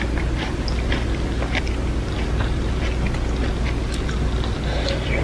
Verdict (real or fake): real